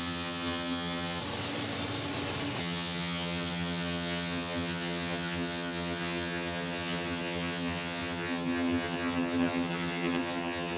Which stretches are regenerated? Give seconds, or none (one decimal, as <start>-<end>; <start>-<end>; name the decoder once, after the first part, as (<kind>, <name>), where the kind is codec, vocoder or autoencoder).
0.0-1.2 (vocoder, HiFi-GAN); 2.6-10.8